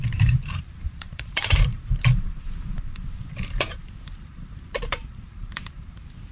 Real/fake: fake